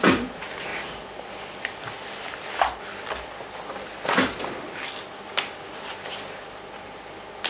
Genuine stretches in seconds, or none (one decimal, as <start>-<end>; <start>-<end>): 0.0-7.5